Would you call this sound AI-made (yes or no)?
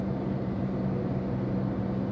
no